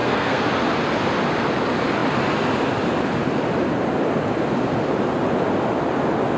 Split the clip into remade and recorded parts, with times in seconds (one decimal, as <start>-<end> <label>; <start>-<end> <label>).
0.0-0.5 remade; 0.5-6.4 recorded